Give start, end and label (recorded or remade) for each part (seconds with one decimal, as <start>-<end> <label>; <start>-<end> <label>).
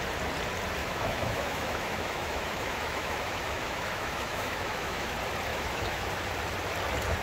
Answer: 0.0-0.8 recorded; 0.8-5.1 remade; 5.1-5.5 recorded; 5.5-6.1 remade; 6.1-7.2 recorded